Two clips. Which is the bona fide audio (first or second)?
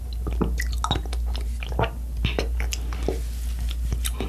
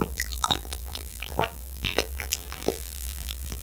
first